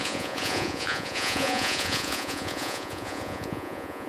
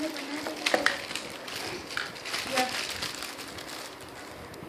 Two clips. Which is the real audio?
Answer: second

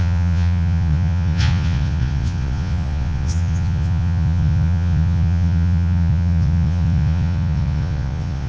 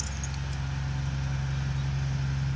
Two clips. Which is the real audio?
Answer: second